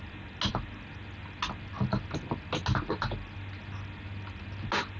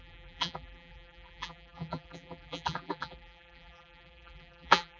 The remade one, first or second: second